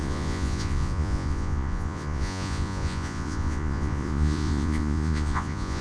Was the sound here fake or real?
fake